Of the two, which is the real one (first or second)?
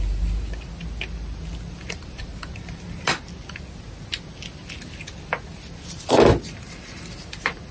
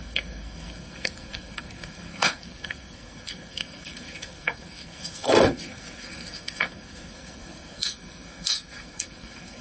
first